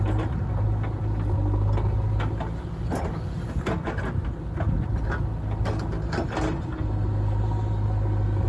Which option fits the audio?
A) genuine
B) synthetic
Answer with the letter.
A